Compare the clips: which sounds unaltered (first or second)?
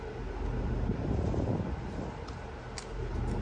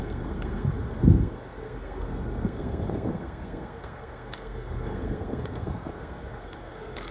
first